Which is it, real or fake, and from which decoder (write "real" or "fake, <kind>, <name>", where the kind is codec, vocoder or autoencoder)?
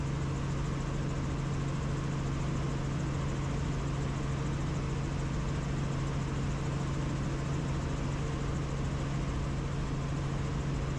real